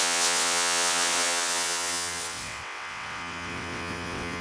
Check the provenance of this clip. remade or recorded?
remade